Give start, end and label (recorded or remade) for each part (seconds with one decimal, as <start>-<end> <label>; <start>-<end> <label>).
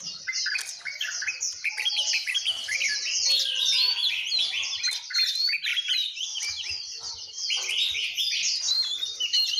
0.0-9.6 recorded